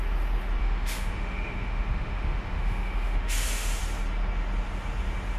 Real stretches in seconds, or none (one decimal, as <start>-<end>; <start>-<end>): 0.0-0.6; 3.8-5.4